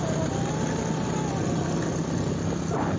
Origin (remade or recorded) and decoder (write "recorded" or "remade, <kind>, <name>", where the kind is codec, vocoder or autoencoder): recorded